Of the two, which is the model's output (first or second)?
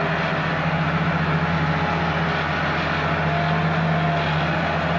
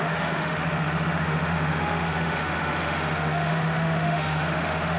second